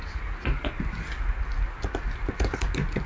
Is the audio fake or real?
real